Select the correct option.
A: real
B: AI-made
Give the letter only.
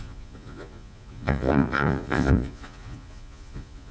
B